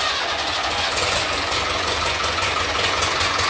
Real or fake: fake